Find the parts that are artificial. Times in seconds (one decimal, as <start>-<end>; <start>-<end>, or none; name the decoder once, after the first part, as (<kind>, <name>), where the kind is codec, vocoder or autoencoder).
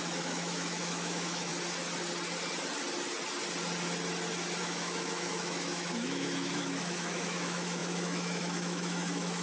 0.0-1.5 (autoencoder, DAC-VAE); 4.6-9.4